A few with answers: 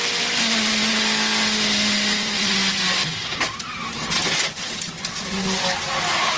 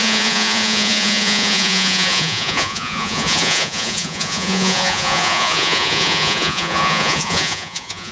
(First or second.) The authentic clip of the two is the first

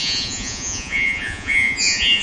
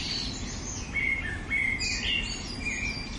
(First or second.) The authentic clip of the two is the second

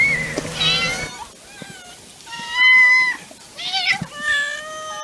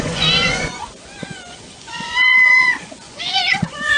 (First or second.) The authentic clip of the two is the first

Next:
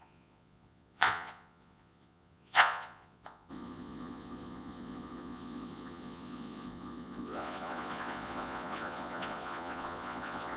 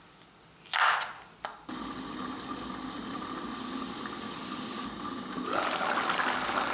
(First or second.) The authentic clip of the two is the second